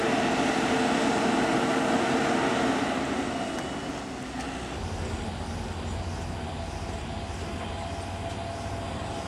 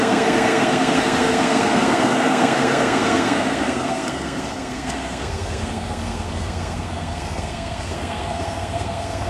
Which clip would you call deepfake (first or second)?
second